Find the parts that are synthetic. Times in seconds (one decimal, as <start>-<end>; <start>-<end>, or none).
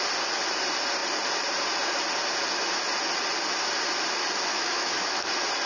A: 4.5-5.3